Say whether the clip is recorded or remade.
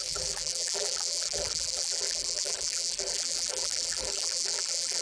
remade